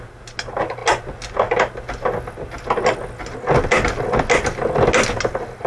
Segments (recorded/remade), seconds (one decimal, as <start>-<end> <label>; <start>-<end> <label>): 0.0-5.7 recorded